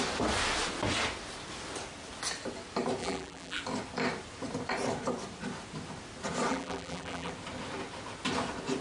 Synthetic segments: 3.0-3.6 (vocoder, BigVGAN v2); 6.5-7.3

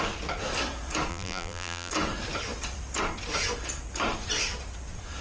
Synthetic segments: 1.1-1.9 (vocoder, BigVGAN v2)